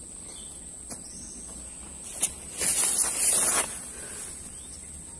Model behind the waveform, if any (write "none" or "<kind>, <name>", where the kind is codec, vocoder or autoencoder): none